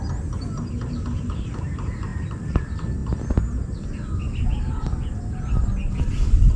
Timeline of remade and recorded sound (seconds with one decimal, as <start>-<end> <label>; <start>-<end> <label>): 0.0-6.6 recorded